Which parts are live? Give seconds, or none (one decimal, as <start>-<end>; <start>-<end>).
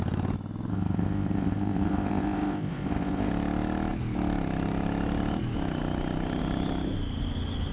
0.0-0.7; 3.3-7.7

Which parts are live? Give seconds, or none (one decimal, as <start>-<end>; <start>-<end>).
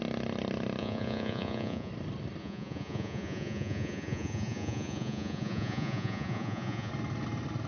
0.0-0.8; 1.9-2.4; 6.9-7.7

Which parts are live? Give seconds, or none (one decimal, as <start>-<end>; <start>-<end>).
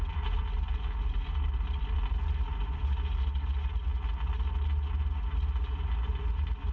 0.0-6.7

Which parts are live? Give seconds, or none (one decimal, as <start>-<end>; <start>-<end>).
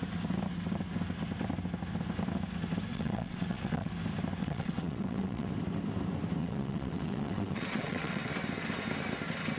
0.0-2.9; 3.9-4.4; 5.5-6.4; 8.3-9.6